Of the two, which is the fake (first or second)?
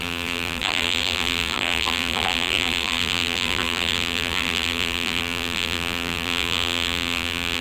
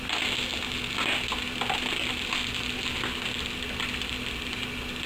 first